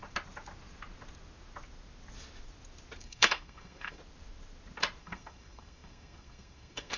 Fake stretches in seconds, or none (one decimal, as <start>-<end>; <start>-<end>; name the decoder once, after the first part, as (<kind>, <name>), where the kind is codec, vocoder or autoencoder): 3.0-4.0 (codec, SNAC); 5.0-7.0